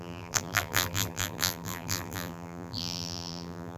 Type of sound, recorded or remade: remade